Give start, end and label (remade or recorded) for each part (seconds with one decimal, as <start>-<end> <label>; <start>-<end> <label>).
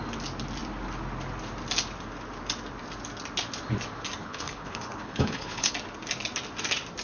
0.0-4.2 recorded; 4.2-5.7 remade; 5.7-7.0 recorded